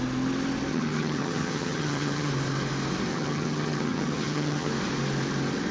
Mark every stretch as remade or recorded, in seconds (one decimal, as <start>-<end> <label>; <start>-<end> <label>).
0.0-0.7 recorded; 0.7-2.3 remade; 2.3-3.1 recorded; 3.1-4.7 remade; 4.7-5.7 recorded